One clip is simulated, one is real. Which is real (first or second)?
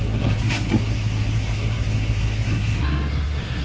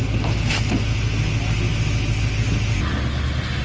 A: second